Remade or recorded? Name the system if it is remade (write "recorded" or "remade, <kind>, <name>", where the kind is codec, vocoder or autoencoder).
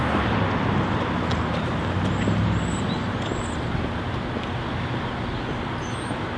recorded